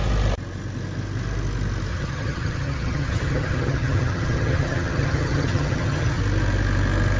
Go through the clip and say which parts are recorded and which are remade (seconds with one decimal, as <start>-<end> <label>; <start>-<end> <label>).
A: 0.0-1.9 recorded; 1.9-6.2 remade; 6.2-7.2 recorded